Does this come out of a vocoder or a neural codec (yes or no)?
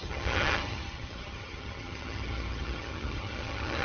yes